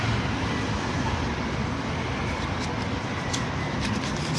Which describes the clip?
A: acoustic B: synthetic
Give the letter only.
A